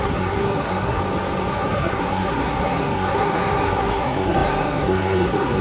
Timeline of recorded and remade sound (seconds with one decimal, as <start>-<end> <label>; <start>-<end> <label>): 0.0-1.0 remade; 1.0-1.5 recorded; 1.5-5.6 remade